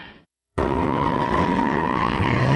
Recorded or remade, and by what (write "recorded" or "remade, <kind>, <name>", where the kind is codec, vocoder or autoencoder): remade, vocoder, WaveNeXt